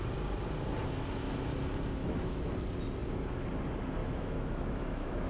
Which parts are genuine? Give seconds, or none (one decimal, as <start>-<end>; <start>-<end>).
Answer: 0.0-2.0; 2.5-4.0